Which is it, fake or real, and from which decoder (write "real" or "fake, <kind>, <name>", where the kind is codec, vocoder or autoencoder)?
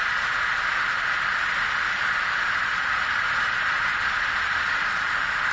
real